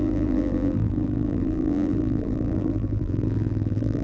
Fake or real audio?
fake